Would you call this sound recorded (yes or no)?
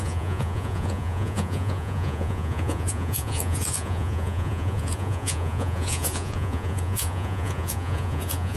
no